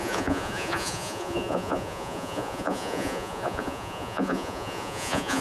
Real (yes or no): no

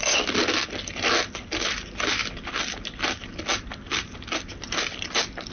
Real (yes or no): yes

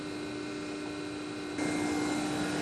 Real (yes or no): yes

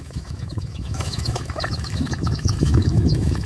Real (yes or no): no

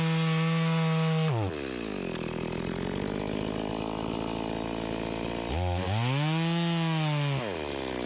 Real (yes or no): yes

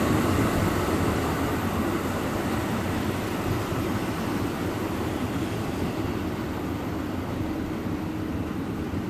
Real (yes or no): yes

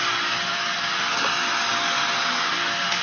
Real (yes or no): yes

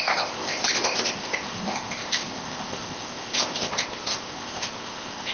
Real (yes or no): no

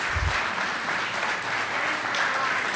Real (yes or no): yes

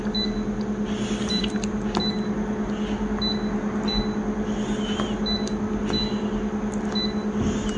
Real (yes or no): yes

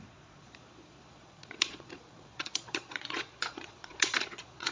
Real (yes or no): no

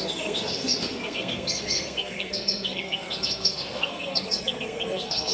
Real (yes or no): no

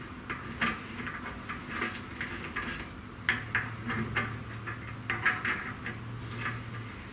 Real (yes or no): yes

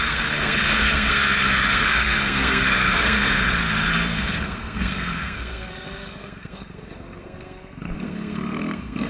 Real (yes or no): no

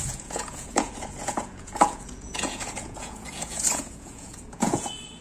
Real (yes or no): no